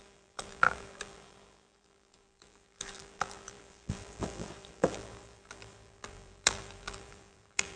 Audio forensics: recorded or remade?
remade